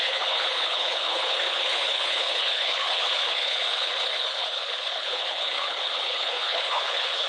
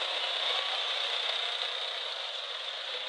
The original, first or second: second